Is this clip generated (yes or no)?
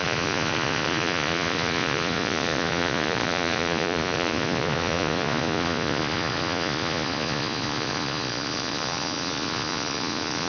yes